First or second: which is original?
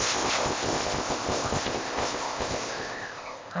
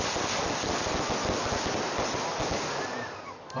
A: second